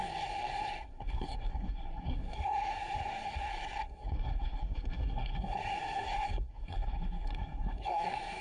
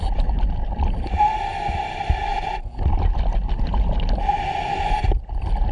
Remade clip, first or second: first